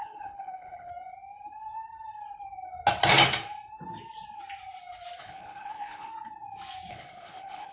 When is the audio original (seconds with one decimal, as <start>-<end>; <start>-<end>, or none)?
0.9-5.2; 6.1-6.9